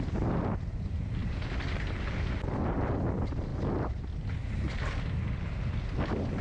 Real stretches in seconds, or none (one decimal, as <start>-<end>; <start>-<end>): 0.0-6.4